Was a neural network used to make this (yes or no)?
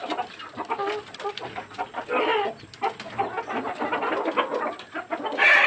no